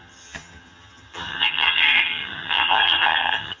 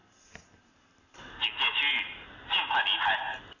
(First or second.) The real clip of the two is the second